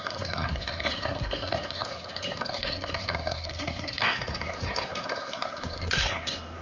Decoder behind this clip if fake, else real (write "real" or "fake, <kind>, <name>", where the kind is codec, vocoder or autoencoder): fake, codec, SNAC